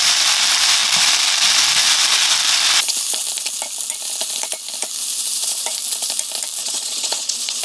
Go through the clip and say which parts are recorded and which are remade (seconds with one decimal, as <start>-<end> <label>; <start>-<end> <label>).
0.0-6.6 recorded; 6.6-7.6 remade